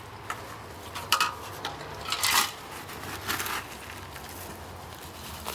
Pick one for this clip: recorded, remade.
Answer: recorded